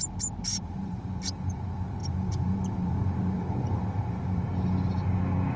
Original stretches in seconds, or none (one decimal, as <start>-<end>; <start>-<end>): 0.0-0.5; 1.1-2.0; 4.4-5.6